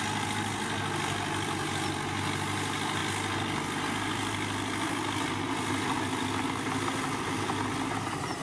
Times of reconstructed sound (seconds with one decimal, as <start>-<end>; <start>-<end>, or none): none